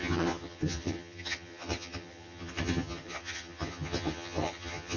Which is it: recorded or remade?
remade